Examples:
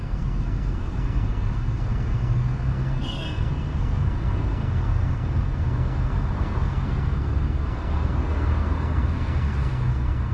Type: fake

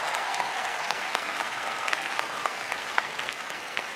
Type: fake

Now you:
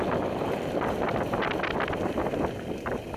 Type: real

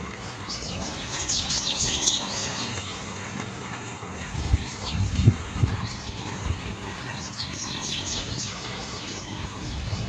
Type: fake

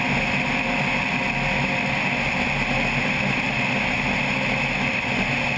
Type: real